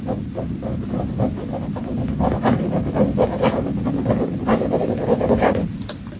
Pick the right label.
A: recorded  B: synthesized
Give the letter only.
A